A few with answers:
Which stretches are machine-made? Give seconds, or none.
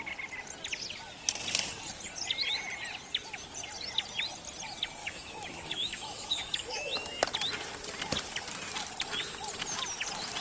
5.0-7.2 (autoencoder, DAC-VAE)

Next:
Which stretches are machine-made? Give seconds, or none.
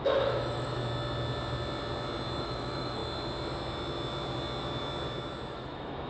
0.0-0.8 (autoencoder, DAC-VAE); 2.4-3.0; 5.5-6.1